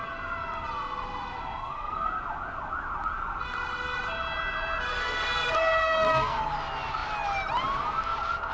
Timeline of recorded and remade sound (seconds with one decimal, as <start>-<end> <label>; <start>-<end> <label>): 0.0-1.6 recorded; 1.6-2.1 remade; 2.1-4.9 recorded; 4.9-6.4 remade; 6.4-8.5 recorded